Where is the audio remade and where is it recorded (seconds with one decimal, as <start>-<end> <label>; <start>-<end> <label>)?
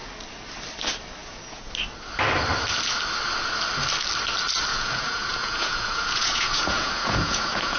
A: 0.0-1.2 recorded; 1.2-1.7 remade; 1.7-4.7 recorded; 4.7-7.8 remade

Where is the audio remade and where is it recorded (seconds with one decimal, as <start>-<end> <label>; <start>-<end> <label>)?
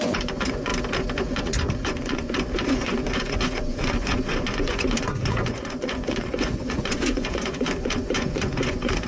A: 0.0-0.7 remade; 0.7-1.2 recorded; 1.2-9.1 remade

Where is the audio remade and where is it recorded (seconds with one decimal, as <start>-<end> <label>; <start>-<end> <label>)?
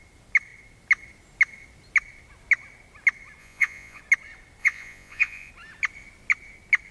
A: 0.0-3.4 recorded; 3.4-4.0 remade; 4.0-4.6 recorded; 4.6-5.5 remade; 5.5-6.9 recorded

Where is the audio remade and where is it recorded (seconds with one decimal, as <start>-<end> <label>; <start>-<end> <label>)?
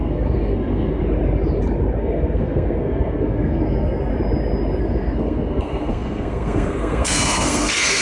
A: 0.0-1.0 remade; 1.0-2.0 recorded; 2.0-4.1 remade; 4.1-4.8 recorded; 4.8-8.0 remade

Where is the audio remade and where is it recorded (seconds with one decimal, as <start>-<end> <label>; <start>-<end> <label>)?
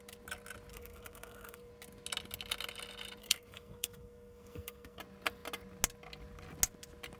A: 0.0-0.7 recorded; 0.7-1.7 remade; 1.7-3.2 recorded; 3.2-5.0 remade; 5.0-7.2 recorded